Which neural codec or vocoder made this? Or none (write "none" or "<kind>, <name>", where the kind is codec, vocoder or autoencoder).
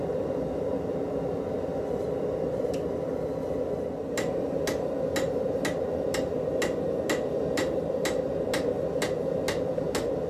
none